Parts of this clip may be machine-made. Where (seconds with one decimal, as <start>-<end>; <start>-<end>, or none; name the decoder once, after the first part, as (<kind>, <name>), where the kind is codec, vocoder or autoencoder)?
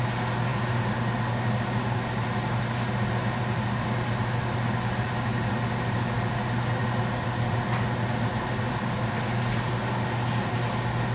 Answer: none